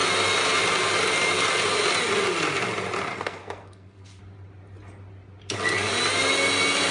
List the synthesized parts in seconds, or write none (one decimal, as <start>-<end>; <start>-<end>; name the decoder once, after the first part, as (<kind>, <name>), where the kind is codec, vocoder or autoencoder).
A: 3.1-4.2 (codec, SNAC)